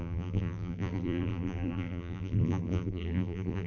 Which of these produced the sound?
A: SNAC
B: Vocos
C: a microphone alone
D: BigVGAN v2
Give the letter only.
D